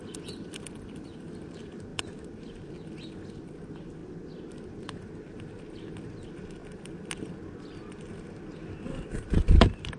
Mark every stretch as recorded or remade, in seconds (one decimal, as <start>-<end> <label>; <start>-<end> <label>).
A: 0.0-10.0 recorded